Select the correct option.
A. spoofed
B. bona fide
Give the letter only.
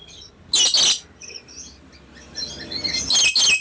B